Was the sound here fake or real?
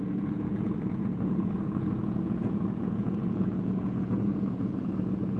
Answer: fake